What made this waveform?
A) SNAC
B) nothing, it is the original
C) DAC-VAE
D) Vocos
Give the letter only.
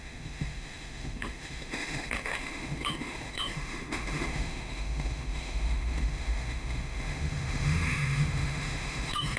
C